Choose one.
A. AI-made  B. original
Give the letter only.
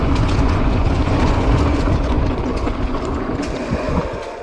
A